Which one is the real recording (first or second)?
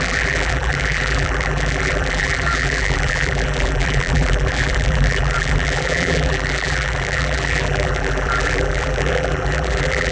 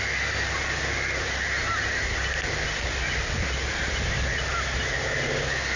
second